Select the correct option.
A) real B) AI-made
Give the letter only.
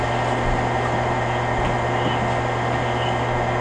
A